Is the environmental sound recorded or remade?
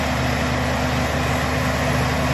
recorded